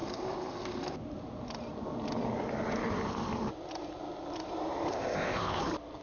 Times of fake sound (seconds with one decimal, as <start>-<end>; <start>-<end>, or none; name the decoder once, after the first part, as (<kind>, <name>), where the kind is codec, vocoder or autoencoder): 4.9-5.6 (codec, ZipCodec)